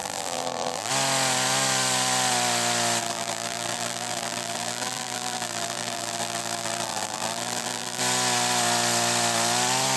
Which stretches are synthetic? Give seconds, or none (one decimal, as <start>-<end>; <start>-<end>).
0.0-0.9; 3.0-8.0